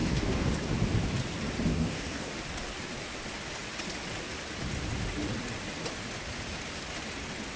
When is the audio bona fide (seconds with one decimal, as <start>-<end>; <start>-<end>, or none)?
0.5-1.7; 2.3-7.6